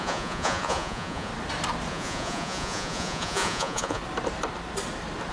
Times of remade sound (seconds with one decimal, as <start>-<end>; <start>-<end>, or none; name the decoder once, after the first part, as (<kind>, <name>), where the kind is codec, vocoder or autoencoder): 0.0-1.3 (vocoder, Vocos); 1.9-4.0